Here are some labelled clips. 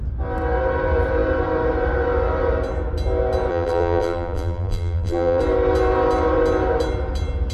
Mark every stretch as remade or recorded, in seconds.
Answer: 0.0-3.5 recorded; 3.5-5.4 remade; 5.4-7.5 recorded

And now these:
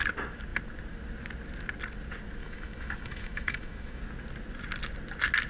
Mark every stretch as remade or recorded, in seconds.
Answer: 0.0-2.4 recorded; 2.4-4.0 remade; 4.0-5.5 recorded

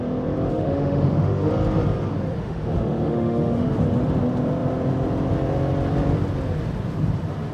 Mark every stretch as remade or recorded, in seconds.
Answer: 0.0-0.5 recorded; 0.5-1.5 remade; 1.5-2.3 recorded; 2.3-3.8 remade; 3.8-7.5 recorded

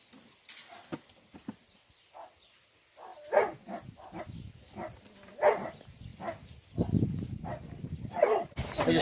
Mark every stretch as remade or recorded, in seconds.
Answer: 0.0-9.0 recorded

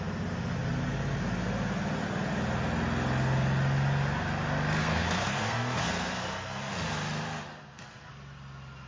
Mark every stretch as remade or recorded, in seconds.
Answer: 0.0-4.8 recorded; 4.8-6.7 remade; 6.7-7.5 recorded; 7.5-8.1 remade; 8.1-8.9 recorded